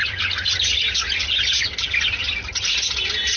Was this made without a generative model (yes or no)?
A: yes